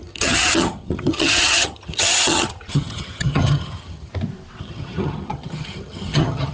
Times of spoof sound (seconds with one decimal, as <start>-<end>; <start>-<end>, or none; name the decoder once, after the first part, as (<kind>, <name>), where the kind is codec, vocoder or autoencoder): 0.0-4.1 (vocoder, HiFi-GAN); 4.6-6.5

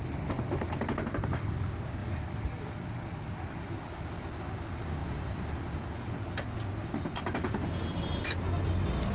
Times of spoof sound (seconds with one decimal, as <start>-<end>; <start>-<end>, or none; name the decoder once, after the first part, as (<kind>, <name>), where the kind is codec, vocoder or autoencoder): 5.0-5.5 (vocoder, BigVGAN v2)

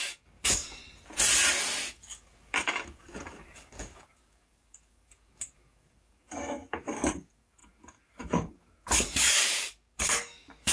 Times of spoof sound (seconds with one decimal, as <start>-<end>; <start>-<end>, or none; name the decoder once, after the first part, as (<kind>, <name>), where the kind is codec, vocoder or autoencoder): 0.0-0.8 (codec, DAC); 1.9-10.7